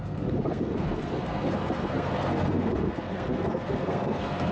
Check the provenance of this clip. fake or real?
fake